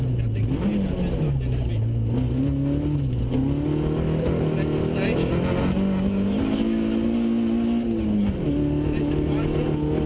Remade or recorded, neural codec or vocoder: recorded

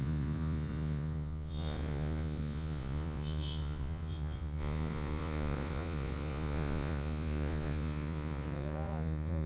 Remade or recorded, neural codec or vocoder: remade, vocoder, Vocos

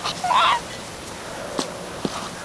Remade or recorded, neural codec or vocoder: recorded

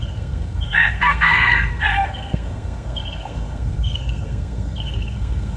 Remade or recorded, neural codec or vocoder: remade, codec, SNAC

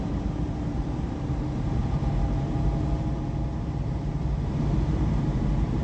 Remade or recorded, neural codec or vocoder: remade, vocoder, BigVGAN v2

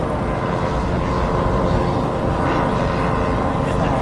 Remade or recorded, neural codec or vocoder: recorded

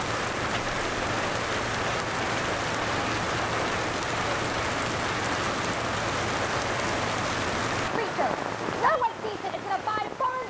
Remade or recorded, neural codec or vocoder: recorded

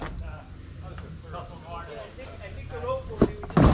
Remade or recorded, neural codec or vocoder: recorded